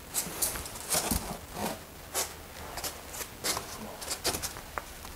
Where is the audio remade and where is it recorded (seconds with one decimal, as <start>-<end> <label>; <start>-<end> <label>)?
0.0-5.2 recorded